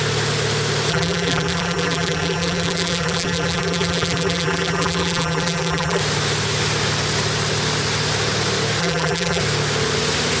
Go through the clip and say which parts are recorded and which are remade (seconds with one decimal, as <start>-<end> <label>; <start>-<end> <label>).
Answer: 0.0-0.9 recorded; 0.9-6.0 remade; 6.0-8.8 recorded; 8.8-9.4 remade; 9.4-10.4 recorded